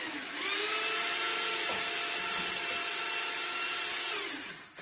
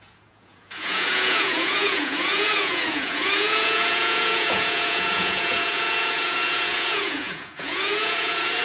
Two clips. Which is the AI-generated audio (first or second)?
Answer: second